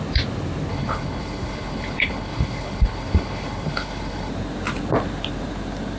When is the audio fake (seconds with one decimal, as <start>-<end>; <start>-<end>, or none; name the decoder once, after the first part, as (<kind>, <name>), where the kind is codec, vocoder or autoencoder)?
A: 0.7-4.3 (codec, HILCodec)